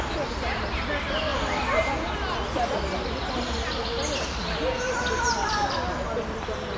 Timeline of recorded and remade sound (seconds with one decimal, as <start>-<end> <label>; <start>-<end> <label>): 0.0-6.8 recorded